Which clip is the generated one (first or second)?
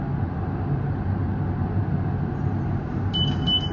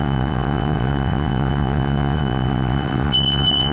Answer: second